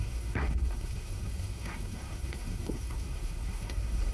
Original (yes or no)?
no